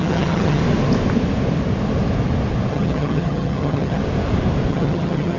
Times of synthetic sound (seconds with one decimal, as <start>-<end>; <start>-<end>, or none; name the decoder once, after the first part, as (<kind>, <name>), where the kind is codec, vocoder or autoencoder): 0.0-0.6 (vocoder, HiFi-GAN); 2.7-4.0; 4.7-5.4

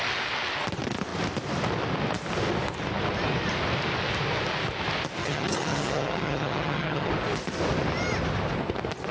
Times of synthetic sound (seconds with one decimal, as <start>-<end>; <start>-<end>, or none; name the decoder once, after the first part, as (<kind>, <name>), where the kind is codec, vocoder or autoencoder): 5.2-7.1 (vocoder, HiFi-GAN)

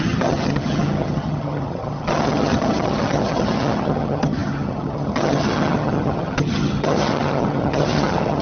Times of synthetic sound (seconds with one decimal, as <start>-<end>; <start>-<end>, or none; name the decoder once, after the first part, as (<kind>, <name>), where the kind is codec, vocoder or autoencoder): 0.0-8.4 (vocoder, HiFi-GAN)

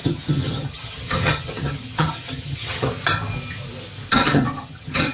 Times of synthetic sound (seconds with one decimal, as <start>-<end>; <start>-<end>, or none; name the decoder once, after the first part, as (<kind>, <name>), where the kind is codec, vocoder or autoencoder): 0.0-2.9 (vocoder, HiFi-GAN); 4.1-5.1